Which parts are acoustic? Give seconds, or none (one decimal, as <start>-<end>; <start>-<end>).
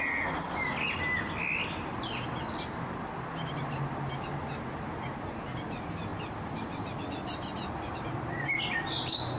0.0-9.4